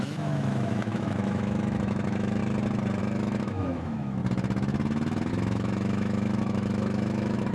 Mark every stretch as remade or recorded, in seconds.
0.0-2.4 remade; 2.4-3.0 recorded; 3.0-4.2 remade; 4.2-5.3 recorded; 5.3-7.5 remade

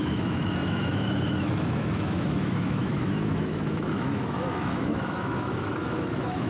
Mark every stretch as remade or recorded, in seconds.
0.0-6.5 remade